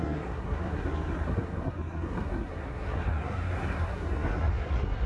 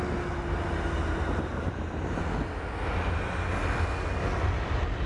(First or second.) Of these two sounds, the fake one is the first